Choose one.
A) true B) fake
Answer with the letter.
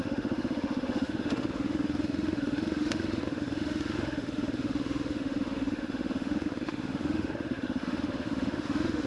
B